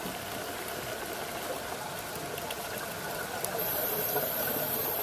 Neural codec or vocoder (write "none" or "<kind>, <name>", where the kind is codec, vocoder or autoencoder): none